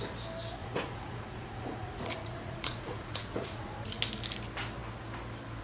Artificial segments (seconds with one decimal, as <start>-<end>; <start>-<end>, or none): 0.6-4.0